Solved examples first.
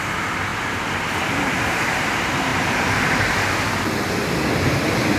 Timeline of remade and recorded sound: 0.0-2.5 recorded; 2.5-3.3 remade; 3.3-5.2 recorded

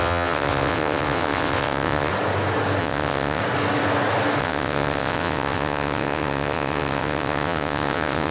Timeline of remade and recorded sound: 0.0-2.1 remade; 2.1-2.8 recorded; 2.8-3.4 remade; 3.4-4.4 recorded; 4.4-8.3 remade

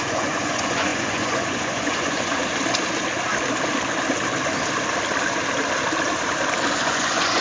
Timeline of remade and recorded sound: 0.0-2.4 remade; 2.4-6.8 recorded; 6.8-7.4 remade